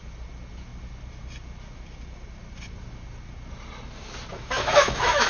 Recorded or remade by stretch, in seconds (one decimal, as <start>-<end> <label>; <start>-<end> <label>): 0.0-4.3 recorded; 4.3-5.3 remade